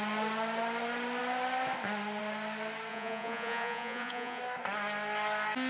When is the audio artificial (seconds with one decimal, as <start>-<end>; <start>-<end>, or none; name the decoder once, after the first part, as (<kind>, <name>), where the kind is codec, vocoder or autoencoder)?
2.9-4.4 (vocoder, Vocos)